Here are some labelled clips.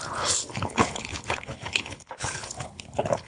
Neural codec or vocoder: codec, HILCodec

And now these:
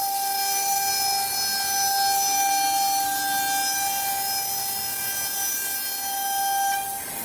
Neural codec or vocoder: none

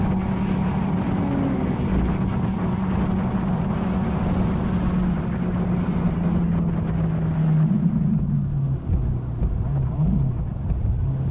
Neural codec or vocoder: none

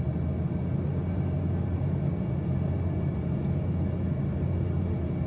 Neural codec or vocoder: none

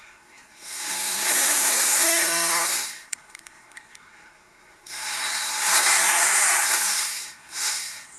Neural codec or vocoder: codec, SNAC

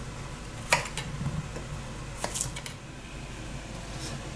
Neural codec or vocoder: none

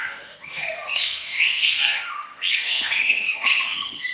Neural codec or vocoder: codec, SNAC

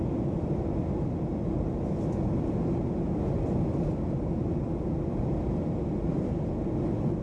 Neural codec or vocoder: none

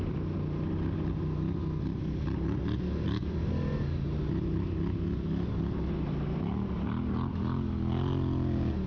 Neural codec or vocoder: none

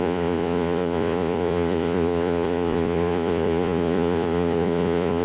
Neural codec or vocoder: vocoder, Vocos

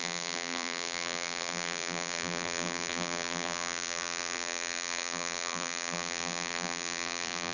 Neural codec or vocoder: vocoder, BigVGAN v2